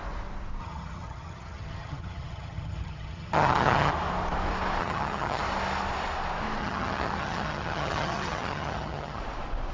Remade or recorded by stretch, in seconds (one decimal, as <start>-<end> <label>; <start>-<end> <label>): 0.0-0.6 recorded; 0.6-3.9 remade; 3.9-4.8 recorded; 4.8-5.4 remade; 5.4-6.6 recorded; 6.6-9.2 remade; 9.2-9.7 recorded